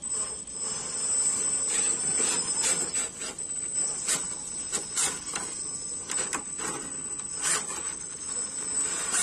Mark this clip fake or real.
real